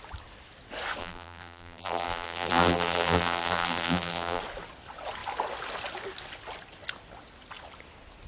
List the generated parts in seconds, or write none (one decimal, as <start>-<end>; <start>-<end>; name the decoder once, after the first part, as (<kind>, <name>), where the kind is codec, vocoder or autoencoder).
1.0-4.4 (vocoder, BigVGAN v2)